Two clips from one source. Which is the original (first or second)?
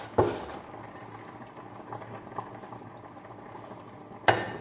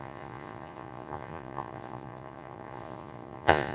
first